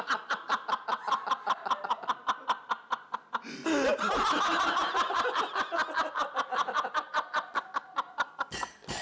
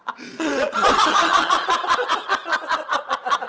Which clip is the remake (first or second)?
second